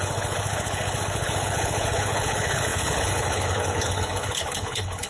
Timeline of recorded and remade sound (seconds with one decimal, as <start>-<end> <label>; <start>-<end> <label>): 0.0-5.1 remade